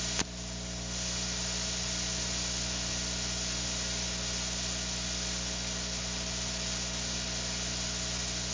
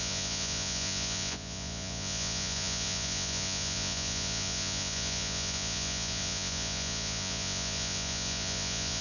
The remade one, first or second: second